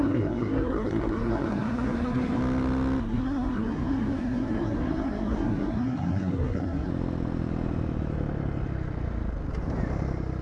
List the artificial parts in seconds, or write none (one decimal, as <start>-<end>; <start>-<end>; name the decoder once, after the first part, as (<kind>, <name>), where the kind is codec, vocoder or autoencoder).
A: 0.0-2.4 (codec, SNAC); 3.0-6.9